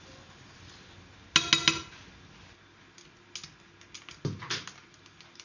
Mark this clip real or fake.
real